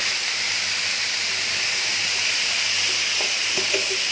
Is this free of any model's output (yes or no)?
yes